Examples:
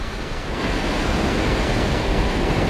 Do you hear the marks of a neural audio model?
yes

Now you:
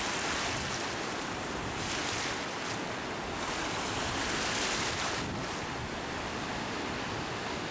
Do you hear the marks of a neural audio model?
no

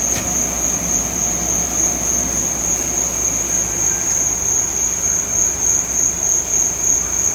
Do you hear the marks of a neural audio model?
no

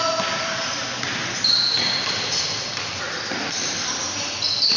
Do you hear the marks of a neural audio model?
no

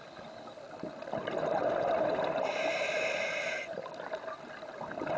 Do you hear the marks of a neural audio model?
no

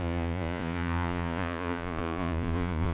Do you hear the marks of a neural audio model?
yes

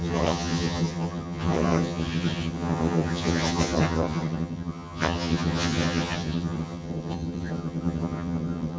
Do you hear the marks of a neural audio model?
yes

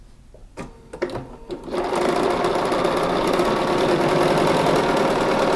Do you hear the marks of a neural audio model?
no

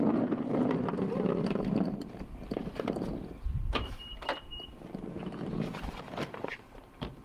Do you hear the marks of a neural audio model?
yes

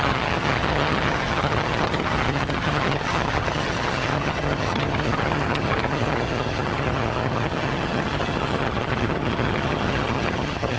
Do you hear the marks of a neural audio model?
yes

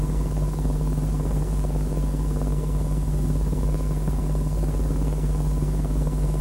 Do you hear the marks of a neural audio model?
yes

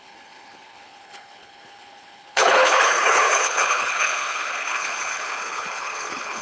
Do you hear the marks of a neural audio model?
yes